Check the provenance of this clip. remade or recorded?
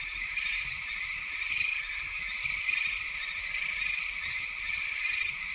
recorded